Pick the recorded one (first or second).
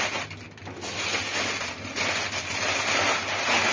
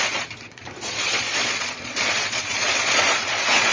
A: first